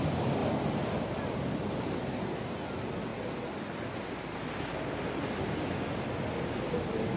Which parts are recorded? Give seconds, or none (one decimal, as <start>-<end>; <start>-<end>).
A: 0.0-7.2